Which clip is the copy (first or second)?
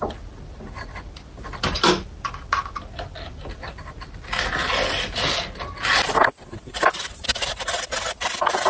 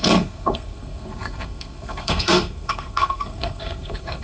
second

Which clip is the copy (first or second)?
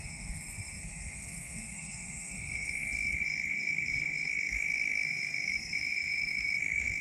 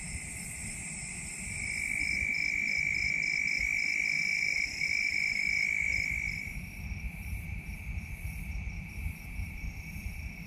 first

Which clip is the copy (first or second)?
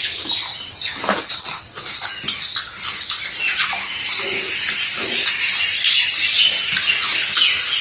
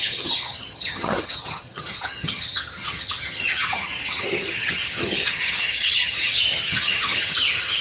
second